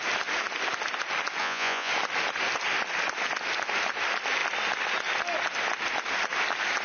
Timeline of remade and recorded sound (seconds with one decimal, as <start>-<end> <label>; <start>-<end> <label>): 0.0-1.4 recorded; 1.4-1.9 remade; 1.9-6.8 recorded